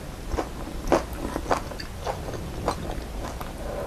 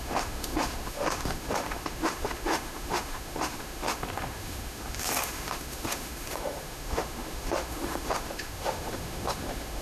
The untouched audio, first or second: first